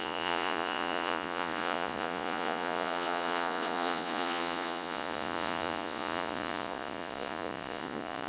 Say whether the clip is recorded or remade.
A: remade